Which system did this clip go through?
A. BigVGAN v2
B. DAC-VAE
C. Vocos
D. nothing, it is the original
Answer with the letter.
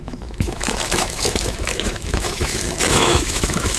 B